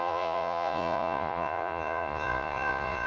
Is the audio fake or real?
fake